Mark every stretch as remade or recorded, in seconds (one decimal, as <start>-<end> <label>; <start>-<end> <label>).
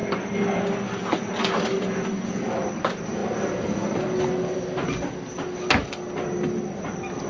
0.0-7.3 recorded